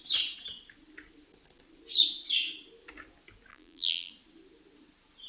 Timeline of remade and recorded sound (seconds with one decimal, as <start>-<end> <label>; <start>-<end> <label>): 0.0-3.5 recorded; 3.5-4.1 remade; 4.1-5.3 recorded